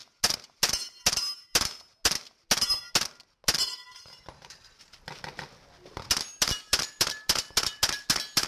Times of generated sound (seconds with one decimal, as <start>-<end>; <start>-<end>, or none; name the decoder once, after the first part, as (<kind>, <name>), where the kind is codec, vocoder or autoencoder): none